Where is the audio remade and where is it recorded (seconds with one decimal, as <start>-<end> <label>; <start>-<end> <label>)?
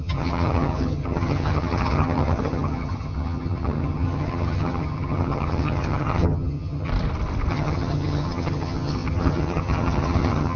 0.0-6.9 remade; 6.9-7.5 recorded; 7.5-10.6 remade